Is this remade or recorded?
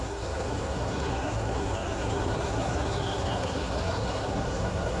remade